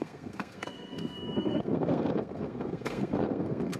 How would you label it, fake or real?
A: fake